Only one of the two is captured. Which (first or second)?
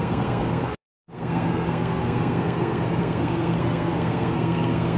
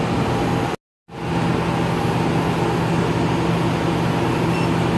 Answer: second